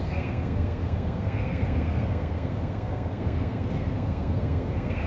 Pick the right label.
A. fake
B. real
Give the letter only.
A